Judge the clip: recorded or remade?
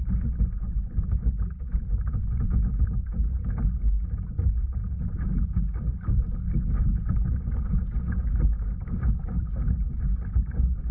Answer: recorded